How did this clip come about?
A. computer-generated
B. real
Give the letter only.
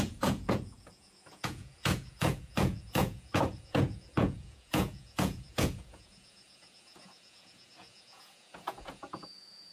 A